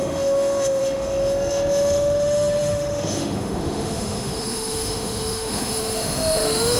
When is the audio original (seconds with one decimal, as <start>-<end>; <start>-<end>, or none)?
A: none